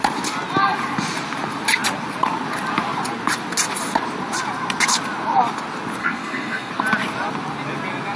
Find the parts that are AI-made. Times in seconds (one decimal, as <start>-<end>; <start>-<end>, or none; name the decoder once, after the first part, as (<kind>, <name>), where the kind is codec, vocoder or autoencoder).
6.0-6.7 (codec, SNAC)